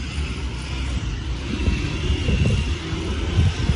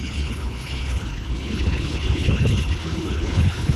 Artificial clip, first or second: second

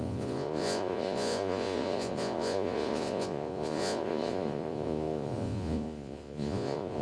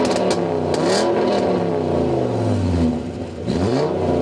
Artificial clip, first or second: first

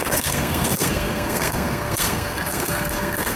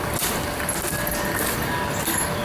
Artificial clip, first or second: first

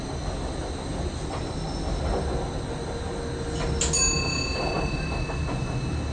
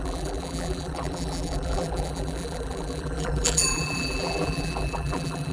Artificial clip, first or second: second